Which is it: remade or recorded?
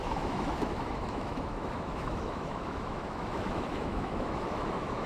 remade